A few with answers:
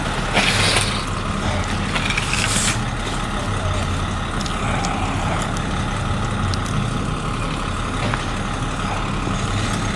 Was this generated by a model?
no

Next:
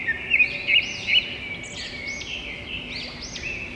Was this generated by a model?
no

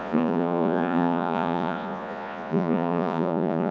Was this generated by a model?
yes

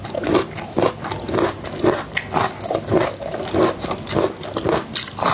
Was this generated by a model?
no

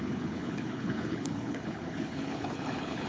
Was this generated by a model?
yes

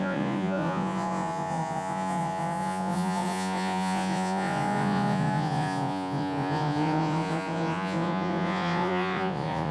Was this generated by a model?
yes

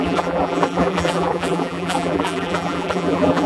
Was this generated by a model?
yes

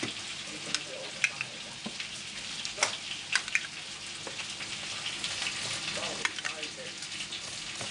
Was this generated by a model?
no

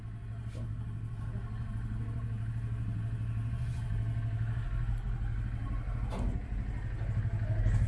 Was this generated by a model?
no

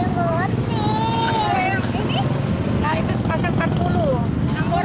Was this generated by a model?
no